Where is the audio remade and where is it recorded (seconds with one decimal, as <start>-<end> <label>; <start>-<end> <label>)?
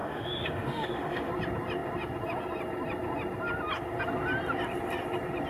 0.0-1.3 remade; 1.3-5.5 recorded